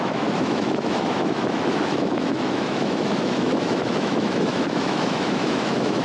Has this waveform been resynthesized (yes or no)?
yes